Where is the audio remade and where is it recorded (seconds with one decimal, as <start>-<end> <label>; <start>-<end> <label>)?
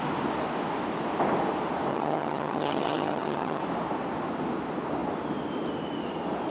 0.0-1.9 recorded; 1.9-3.6 remade; 3.6-6.5 recorded